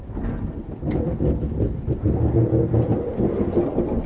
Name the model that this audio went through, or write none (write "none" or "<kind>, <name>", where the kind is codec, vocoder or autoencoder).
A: none